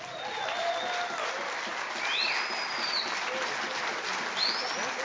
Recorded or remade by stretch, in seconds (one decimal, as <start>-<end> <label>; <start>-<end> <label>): 0.0-5.0 recorded